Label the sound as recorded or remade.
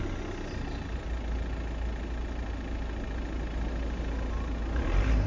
recorded